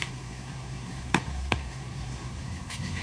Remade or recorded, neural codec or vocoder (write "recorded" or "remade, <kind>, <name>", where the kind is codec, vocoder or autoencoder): remade, codec, SNAC